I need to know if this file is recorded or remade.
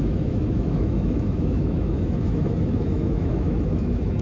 remade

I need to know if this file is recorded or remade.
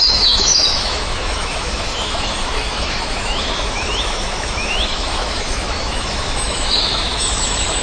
remade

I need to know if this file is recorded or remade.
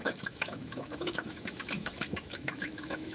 remade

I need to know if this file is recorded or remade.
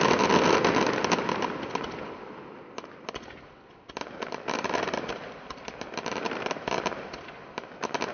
recorded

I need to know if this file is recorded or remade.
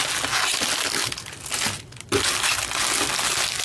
recorded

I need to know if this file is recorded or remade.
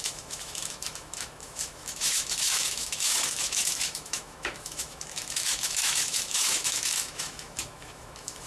remade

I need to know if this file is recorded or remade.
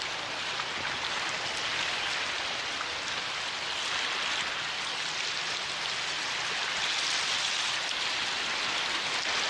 recorded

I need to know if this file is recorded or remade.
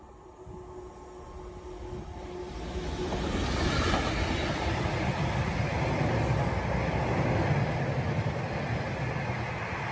recorded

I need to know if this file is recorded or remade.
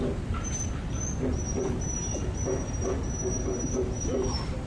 recorded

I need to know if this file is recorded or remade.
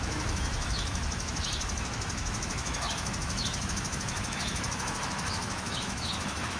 remade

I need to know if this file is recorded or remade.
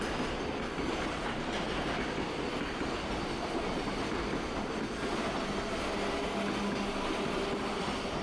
recorded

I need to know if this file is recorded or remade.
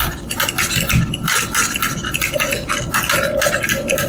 recorded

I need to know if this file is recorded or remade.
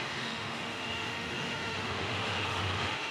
remade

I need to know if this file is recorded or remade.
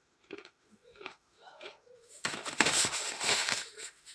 remade